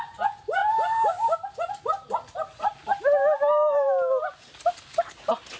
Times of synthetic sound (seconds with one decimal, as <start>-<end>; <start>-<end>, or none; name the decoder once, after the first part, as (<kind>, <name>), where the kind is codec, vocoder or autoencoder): none